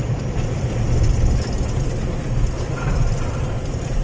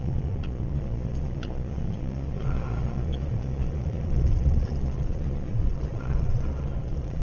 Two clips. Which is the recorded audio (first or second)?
first